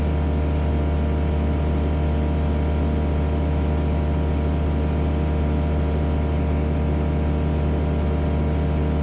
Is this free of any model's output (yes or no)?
yes